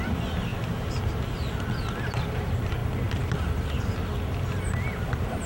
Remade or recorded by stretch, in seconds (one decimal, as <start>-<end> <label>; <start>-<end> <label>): 0.0-5.5 recorded